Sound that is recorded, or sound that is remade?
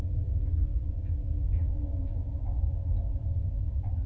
recorded